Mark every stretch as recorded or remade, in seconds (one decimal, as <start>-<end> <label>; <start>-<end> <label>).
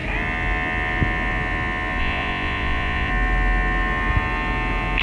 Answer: 0.0-2.0 recorded; 2.0-3.1 remade; 3.1-5.0 recorded